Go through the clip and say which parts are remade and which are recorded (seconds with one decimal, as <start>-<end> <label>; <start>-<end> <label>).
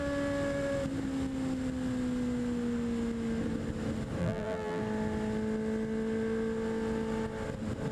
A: 0.0-4.2 recorded; 4.2-4.8 remade; 4.8-7.9 recorded